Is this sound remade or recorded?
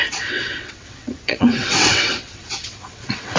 remade